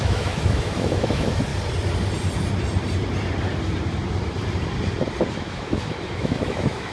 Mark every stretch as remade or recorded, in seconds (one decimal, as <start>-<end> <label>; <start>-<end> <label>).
0.0-1.5 remade; 1.5-5.3 recorded; 5.3-6.9 remade